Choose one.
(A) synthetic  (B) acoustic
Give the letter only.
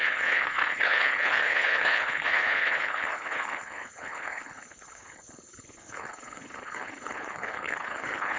A